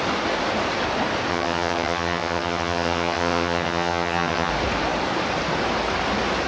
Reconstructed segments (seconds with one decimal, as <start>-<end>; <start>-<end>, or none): 1.3-4.5